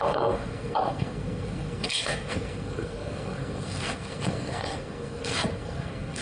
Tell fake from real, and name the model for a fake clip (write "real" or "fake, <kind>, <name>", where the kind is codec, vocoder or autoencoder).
fake, codec, SNAC